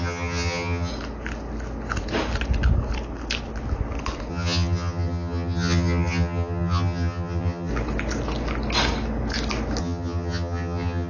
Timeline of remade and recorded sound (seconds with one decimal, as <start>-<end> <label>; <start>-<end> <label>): 0.0-0.9 remade; 0.9-4.3 recorded; 4.3-7.7 remade; 7.7-9.8 recorded; 9.8-11.1 remade